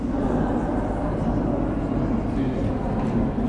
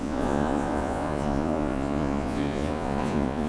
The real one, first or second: first